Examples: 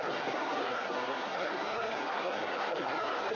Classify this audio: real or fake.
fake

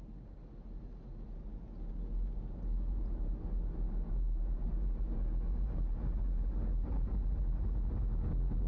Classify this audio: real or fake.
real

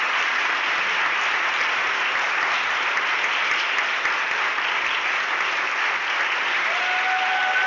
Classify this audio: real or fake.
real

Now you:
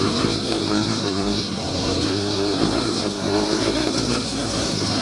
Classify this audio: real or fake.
fake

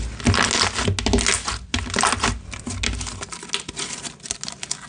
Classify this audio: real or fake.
real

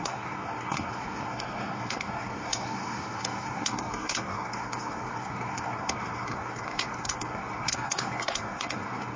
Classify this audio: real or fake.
fake